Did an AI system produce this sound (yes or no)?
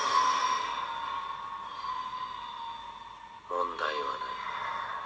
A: no